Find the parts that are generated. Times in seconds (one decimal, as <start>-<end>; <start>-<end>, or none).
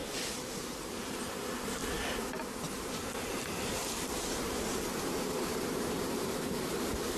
0.0-1.8; 3.1-3.8; 4.4-7.2